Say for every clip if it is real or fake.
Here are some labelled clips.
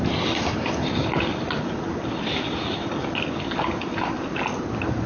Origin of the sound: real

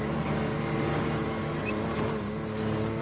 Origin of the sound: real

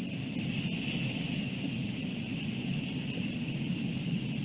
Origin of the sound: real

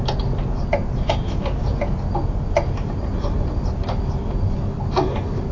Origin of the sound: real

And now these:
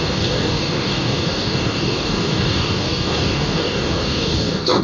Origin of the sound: fake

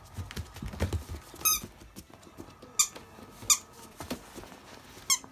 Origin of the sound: real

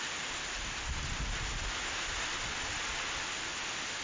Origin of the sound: real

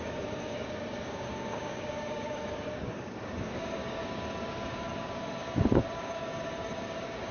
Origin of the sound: fake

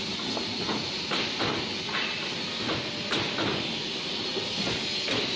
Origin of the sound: real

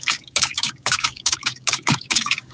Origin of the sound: fake